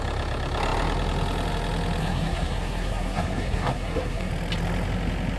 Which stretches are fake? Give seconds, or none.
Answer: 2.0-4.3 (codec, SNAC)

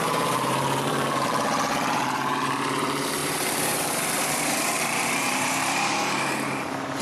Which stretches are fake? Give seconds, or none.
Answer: 0.0-7.0 (vocoder, BigVGAN v2)

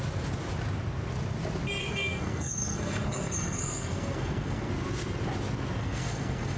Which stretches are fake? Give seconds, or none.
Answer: 1.8-4.7 (codec, SNAC); 5.8-6.6

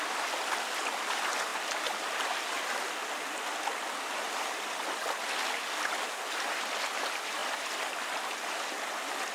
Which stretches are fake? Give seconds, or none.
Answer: none

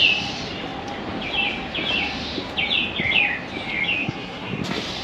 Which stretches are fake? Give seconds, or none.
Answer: 4.0-4.6 (codec, SNAC)

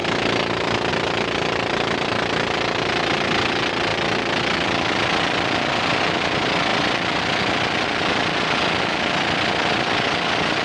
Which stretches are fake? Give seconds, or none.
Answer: 6.7-7.2 (vocoder, BigVGAN v2)

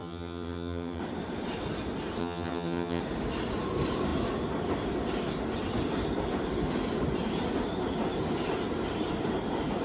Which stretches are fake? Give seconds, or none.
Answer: 0.0-1.0 (vocoder, HiFi-GAN); 2.2-3.0

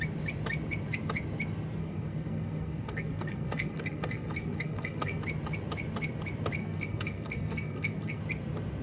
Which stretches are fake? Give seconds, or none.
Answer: 1.8-5.2 (codec, SNAC); 6.6-8.2